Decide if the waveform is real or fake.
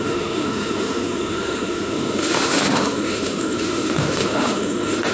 fake